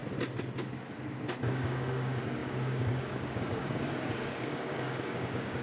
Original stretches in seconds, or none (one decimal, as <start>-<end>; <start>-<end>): 0.0-1.4